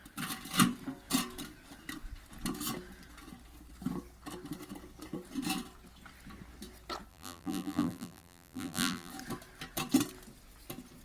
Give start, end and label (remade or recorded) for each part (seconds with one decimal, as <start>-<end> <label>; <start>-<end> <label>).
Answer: 0.0-7.1 recorded; 7.1-9.1 remade; 9.1-11.0 recorded